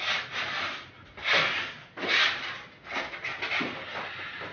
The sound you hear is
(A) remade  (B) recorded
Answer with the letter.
B